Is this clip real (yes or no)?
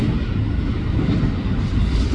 yes